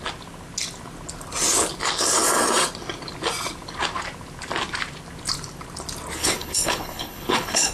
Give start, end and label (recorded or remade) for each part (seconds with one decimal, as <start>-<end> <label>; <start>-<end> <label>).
0.0-6.2 recorded; 6.2-7.7 remade